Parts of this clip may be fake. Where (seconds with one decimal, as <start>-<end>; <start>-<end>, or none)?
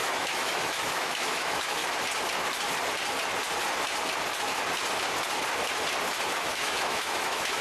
0.0-1.8; 6.3-7.6